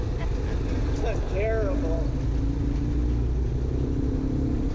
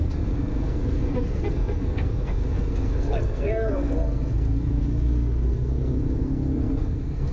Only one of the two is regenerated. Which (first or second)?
second